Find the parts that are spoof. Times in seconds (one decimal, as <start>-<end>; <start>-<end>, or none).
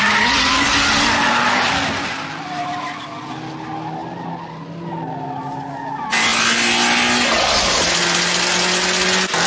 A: none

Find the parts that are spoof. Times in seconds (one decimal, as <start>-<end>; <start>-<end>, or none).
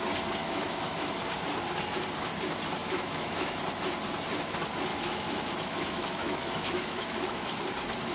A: 0.4-1.1; 2.8-3.6; 4.9-7.6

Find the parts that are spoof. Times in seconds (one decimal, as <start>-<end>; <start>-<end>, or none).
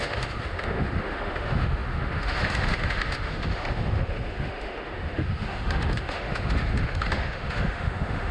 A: 0.0-8.3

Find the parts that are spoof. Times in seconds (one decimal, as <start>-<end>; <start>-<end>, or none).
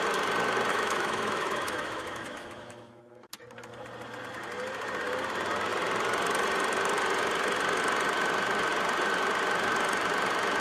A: 0.7-3.0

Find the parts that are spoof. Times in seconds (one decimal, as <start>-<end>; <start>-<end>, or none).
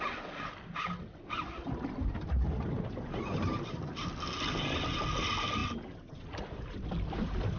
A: none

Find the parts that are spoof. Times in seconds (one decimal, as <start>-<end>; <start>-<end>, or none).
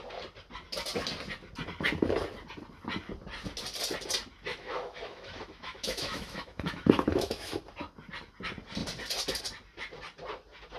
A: 4.5-7.6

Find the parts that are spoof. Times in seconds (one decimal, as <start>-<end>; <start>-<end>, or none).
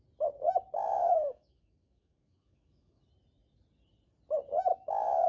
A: 0.9-3.0; 4.7-5.3